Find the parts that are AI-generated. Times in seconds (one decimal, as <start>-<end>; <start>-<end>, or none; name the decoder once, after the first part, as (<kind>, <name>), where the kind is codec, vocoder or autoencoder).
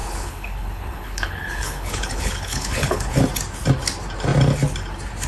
0.0-3.2 (codec, HILCodec)